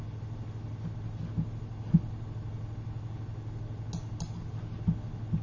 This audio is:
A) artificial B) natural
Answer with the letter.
B